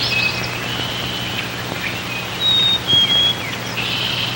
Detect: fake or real real